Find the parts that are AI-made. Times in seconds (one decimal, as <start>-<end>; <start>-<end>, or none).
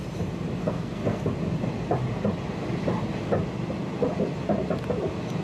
0.6-1.2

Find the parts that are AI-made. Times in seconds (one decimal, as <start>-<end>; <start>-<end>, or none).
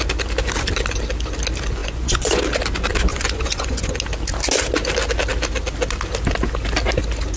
1.8-2.4; 3.1-3.9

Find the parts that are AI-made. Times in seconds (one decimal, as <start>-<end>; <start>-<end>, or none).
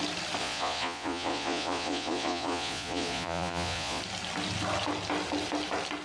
0.4-4.0